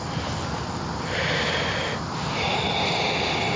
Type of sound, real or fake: real